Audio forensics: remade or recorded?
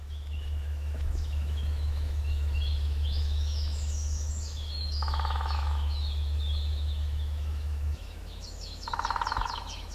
remade